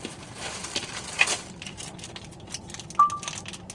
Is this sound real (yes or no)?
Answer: yes